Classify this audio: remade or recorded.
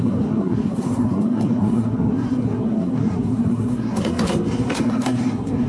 remade